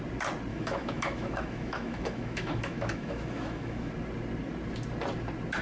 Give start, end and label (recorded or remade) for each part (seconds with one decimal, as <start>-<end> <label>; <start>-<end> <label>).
0.0-0.5 recorded; 0.5-3.9 remade; 3.9-5.6 recorded

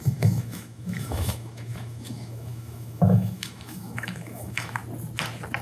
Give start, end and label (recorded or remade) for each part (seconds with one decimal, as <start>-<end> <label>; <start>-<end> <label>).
0.0-4.8 remade; 4.8-5.6 recorded

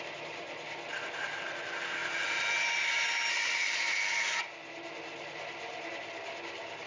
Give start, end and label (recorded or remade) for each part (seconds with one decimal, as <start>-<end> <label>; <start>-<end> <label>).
0.0-6.9 recorded